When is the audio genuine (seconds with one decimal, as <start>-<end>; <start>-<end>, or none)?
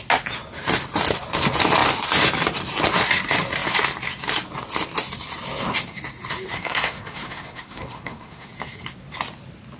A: 0.0-6.5; 8.5-9.8